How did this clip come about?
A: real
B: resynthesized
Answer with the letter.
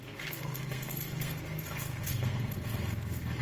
B